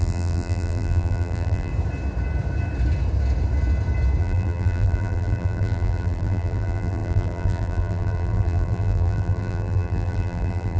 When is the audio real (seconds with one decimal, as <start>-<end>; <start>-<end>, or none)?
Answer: 1.7-4.2